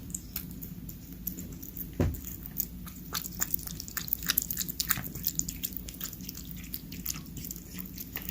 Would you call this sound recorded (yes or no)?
yes